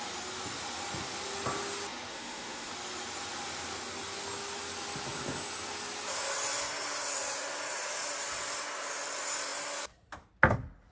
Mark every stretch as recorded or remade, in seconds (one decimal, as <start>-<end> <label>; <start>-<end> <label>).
0.0-2.1 recorded; 2.1-2.7 remade; 2.7-10.9 recorded